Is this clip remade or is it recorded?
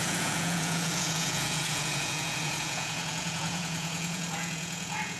remade